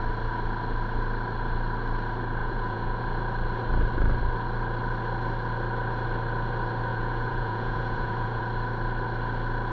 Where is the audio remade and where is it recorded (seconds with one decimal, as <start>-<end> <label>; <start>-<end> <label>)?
0.0-2.4 recorded; 2.4-3.0 remade; 3.0-6.9 recorded; 6.9-8.4 remade; 8.4-9.7 recorded